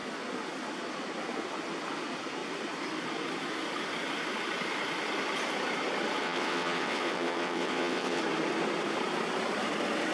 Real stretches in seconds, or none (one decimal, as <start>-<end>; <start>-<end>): 0.0-6.2; 8.2-10.1